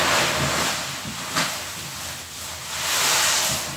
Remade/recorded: recorded